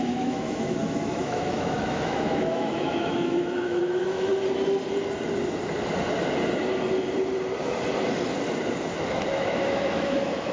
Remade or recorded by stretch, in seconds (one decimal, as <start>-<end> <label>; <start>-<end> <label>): 0.0-4.3 remade; 4.3-9.3 recorded; 9.3-10.5 remade